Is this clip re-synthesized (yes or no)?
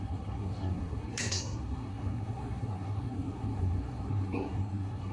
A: yes